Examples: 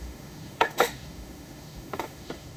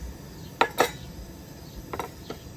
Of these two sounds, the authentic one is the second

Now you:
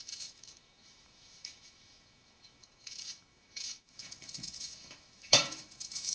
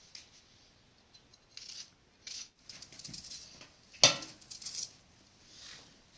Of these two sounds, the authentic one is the second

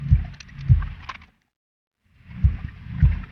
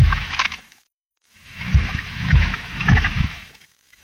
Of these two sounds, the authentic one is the first